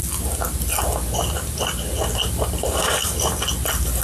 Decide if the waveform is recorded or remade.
recorded